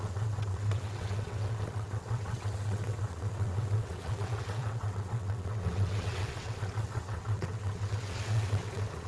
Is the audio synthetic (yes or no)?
yes